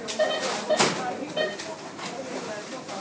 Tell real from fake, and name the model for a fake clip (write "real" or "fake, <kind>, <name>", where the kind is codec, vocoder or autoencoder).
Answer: real